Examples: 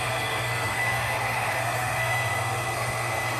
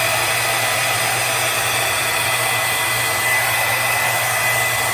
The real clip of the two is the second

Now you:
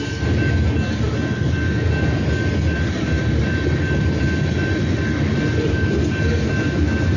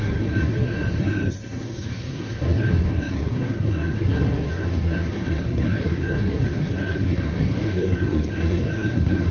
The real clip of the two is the first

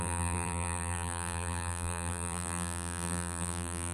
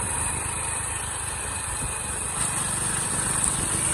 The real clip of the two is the second